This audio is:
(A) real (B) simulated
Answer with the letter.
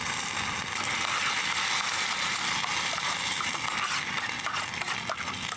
A